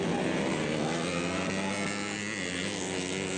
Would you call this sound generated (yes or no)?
no